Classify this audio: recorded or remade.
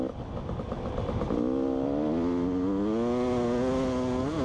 recorded